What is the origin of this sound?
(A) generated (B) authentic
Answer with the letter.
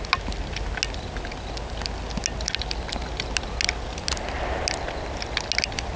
B